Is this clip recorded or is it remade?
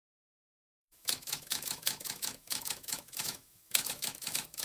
remade